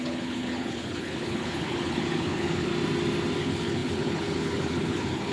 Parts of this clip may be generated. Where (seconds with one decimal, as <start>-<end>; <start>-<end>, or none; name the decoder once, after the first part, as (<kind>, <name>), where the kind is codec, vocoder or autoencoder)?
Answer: 0.0-2.7 (codec, HILCodec); 3.4-5.3